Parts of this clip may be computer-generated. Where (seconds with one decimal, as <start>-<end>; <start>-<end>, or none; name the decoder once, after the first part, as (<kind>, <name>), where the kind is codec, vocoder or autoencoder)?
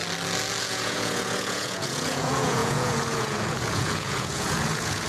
0.6-5.1 (vocoder, Vocos)